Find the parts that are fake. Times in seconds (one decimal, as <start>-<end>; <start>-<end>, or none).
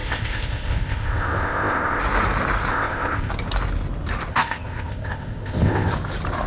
0.0-2.0; 2.7-3.3; 4.3-5.9